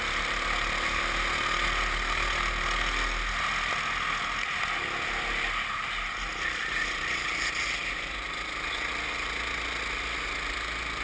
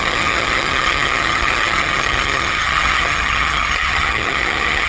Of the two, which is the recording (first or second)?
first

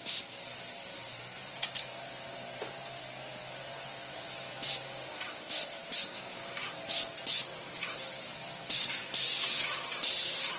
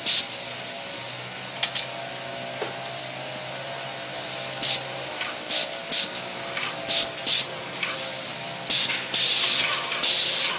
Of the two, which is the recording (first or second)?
second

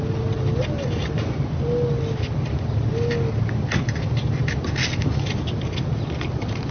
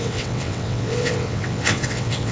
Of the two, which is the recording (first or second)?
first